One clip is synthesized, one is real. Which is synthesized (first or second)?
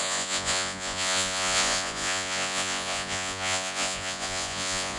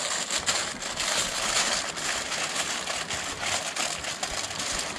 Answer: first